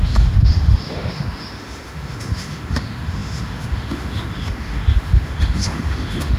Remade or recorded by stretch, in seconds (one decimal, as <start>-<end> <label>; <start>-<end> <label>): 0.0-6.4 remade